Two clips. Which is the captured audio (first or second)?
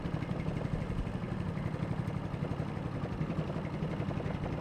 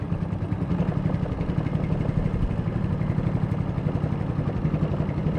second